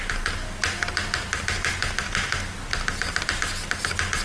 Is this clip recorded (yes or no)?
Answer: yes